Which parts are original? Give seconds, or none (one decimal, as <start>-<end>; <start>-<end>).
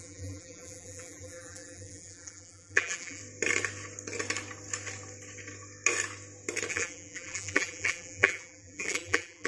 3.2-6.7